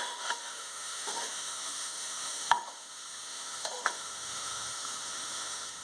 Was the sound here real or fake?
fake